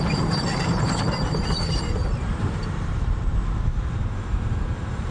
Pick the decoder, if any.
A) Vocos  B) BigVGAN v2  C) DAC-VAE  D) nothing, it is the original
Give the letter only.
B